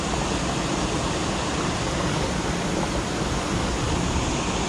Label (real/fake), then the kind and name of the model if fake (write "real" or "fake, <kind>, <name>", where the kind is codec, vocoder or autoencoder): real